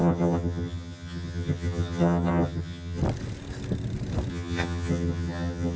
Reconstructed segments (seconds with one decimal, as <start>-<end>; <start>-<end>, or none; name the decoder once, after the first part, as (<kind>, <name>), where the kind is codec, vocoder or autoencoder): 0.0-3.0 (vocoder, HiFi-GAN); 4.3-5.8

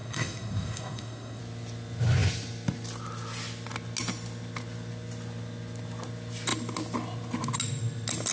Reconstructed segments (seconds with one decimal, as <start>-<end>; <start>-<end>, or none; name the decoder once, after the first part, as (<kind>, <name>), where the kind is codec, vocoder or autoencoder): 0.0-1.4 (codec, SNAC)

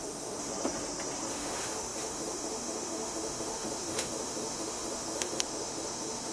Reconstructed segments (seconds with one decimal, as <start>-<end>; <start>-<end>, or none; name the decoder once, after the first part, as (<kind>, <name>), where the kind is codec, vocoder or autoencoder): 0.0-0.5 (autoencoder, DAC-VAE); 1.3-6.3

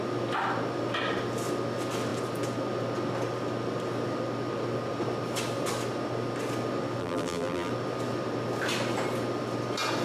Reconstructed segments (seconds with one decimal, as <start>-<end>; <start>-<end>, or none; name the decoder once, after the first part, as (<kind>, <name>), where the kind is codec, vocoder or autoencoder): 7.0-7.7 (vocoder, BigVGAN v2)

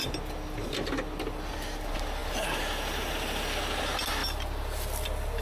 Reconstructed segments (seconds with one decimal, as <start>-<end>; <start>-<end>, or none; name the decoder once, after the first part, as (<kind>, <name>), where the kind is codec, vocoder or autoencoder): none

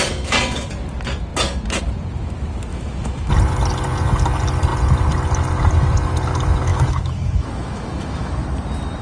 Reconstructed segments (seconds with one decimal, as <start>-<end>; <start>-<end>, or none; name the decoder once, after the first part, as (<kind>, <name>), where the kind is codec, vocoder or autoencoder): 2.7-3.3 (autoencoder, DAC-VAE); 6.7-8.3

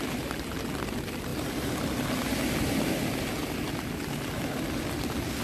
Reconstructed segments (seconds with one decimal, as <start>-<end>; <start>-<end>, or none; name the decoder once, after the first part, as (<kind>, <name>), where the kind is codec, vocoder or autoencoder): none

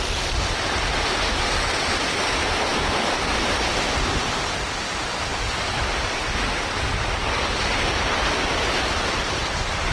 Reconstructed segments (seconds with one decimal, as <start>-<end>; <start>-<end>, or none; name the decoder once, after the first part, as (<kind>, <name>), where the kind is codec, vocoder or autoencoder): none